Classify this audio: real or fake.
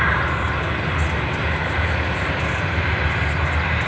real